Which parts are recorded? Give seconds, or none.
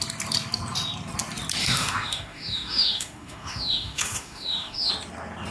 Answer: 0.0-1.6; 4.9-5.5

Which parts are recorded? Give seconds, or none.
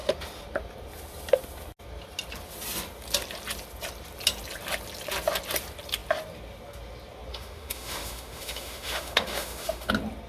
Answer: 0.0-7.3; 9.9-10.3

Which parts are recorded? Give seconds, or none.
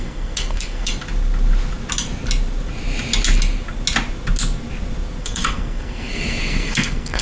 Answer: 0.9-5.2